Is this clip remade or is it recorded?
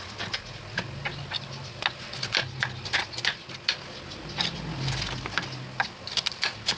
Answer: recorded